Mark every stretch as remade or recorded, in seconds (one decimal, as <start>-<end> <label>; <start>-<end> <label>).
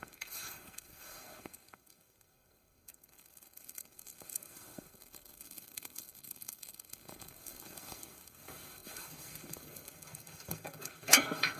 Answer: 0.0-11.6 remade